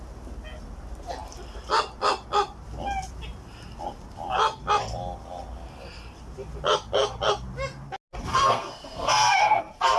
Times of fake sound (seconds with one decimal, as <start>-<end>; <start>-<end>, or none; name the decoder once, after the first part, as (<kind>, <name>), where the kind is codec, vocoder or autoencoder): 8.3-9.6 (codec, SNAC)